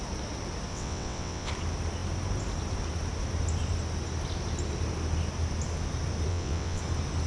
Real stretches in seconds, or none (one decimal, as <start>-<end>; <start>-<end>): 0.0-0.7; 1.5-6.3; 6.8-7.3